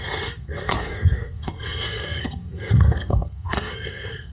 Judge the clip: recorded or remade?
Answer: remade